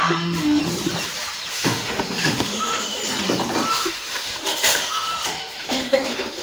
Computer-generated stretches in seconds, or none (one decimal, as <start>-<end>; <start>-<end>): 0.0-0.6; 1.5-3.0; 3.7-6.4